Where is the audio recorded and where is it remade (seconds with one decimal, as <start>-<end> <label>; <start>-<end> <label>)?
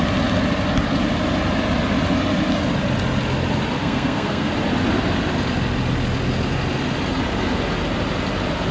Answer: 0.0-3.8 recorded; 3.8-4.5 remade; 4.5-8.7 recorded